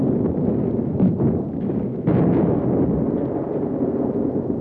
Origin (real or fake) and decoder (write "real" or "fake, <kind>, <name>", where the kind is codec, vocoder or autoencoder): real